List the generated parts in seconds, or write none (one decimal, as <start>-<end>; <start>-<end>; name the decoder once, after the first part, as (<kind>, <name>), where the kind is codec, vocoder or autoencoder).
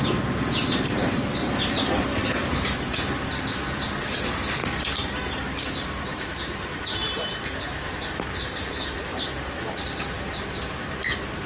0.0-2.2 (vocoder, BigVGAN v2); 5.4-11.5